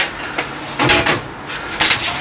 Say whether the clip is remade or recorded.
recorded